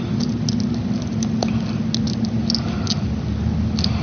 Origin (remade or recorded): recorded